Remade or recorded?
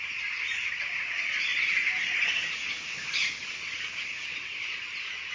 recorded